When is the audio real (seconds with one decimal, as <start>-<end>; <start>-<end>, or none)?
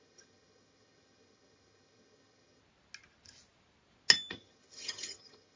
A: 2.6-4.3